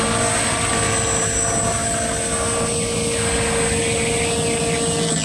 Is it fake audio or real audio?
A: real